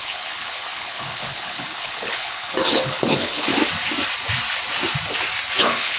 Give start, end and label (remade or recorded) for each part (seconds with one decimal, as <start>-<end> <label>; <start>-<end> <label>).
0.0-3.5 remade; 3.5-5.6 recorded; 5.6-6.0 remade